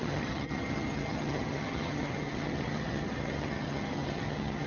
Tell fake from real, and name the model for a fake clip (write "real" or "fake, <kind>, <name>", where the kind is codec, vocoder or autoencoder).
fake, vocoder, HiFi-GAN